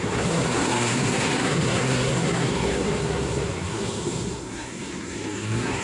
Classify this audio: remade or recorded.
remade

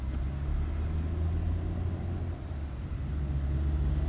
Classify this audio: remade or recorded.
recorded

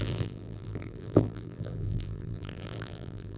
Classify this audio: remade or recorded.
remade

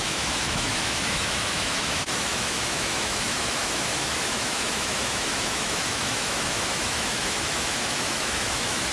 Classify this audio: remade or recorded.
remade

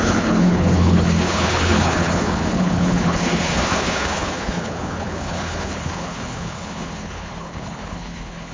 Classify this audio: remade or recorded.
remade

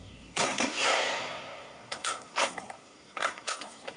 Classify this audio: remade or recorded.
remade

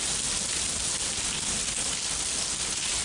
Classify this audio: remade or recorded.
recorded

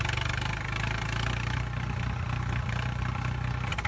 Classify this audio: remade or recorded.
recorded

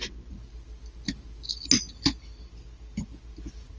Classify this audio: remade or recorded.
recorded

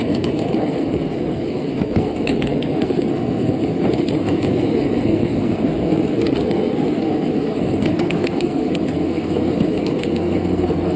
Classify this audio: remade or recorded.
remade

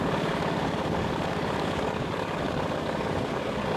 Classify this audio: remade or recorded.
remade